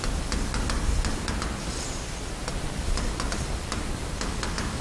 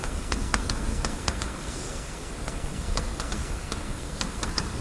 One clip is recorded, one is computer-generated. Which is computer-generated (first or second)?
second